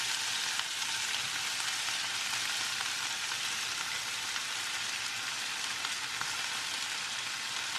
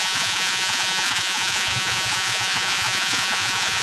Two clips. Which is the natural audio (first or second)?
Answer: first